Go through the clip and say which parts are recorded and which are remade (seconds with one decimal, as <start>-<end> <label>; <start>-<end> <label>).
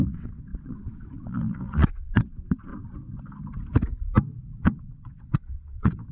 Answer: 0.0-2.7 remade; 2.7-4.6 recorded; 4.6-6.1 remade